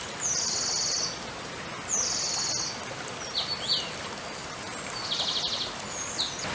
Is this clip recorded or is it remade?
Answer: recorded